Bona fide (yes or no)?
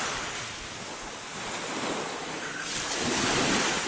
yes